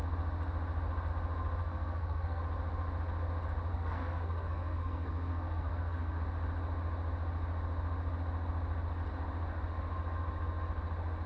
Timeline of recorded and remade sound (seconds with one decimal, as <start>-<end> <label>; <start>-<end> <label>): 0.0-1.6 recorded; 1.6-2.4 remade; 2.4-3.7 recorded; 3.7-6.2 remade; 6.2-11.3 recorded